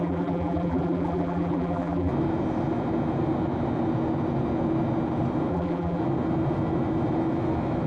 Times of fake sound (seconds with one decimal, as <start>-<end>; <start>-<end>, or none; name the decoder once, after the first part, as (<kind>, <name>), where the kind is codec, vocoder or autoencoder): 0.0-2.1 (vocoder, BigVGAN v2); 5.5-6.0